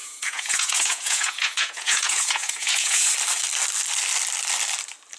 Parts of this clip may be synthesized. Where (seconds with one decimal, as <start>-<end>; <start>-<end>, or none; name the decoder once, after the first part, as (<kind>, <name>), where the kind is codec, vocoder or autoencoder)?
0.0-3.1 (vocoder, Vocos)